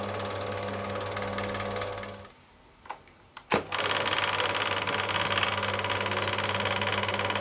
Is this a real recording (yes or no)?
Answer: yes